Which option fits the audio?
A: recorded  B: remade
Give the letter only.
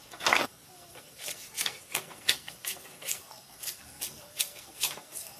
B